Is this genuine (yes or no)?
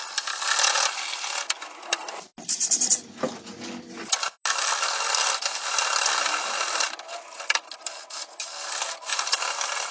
yes